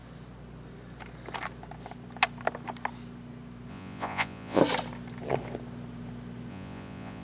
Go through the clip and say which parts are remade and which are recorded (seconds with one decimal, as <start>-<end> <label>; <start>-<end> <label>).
0.0-3.7 recorded; 3.7-4.6 remade; 4.6-6.5 recorded; 6.5-7.2 remade